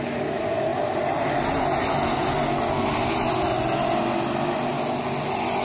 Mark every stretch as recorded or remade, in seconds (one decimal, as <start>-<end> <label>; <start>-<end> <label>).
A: 0.0-5.6 recorded